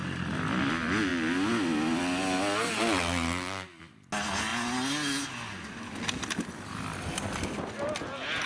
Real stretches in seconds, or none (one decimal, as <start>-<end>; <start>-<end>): 0.0-8.5